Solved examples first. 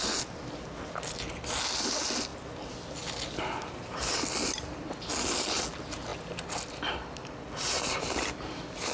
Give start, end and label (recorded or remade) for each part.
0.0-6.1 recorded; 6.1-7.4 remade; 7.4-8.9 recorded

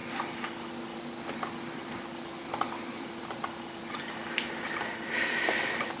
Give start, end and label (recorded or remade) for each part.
0.0-6.0 recorded

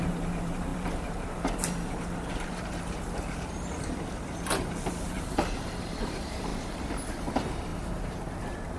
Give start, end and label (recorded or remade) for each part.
0.0-6.5 remade; 6.5-7.2 recorded; 7.2-8.8 remade

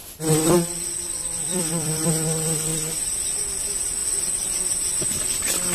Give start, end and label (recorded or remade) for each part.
0.0-1.5 recorded; 1.5-2.1 remade; 2.1-5.7 recorded

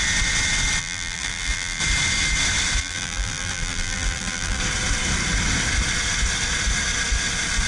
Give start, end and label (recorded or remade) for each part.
0.0-0.8 recorded; 0.8-1.8 remade; 1.8-2.8 recorded; 2.8-4.6 remade; 4.6-7.7 recorded

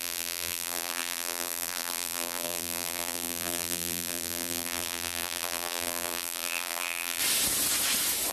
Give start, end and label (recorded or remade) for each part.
0.0-7.2 remade; 7.2-8.3 recorded

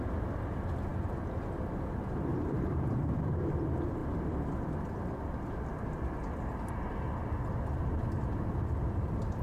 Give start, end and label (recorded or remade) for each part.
0.0-2.3 recorded; 2.3-2.8 remade; 2.8-9.4 recorded

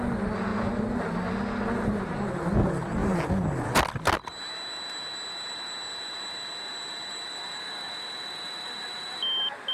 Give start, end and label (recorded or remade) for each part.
0.0-9.7 recorded